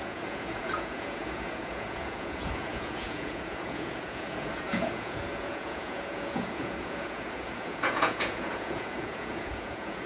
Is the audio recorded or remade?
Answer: remade